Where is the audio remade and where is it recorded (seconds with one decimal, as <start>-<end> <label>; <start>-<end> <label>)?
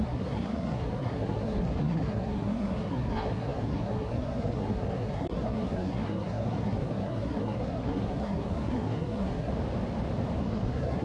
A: 0.0-9.5 remade; 9.5-10.4 recorded; 10.4-11.0 remade